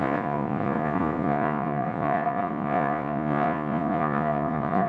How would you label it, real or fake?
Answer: fake